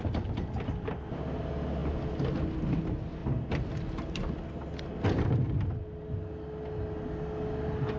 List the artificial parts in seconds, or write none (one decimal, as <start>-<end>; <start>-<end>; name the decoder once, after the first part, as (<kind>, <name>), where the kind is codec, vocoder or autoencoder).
none